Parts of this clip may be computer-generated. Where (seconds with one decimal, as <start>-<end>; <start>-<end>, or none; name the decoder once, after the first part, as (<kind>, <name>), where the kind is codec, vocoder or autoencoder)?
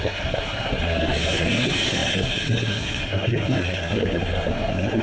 0.0-5.0 (codec, SNAC)